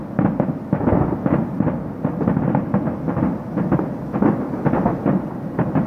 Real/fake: real